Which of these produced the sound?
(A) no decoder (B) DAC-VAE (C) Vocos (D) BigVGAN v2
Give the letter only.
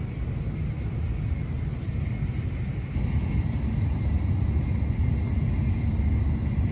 A